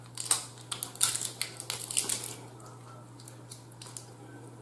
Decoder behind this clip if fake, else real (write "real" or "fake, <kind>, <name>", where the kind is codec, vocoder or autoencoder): real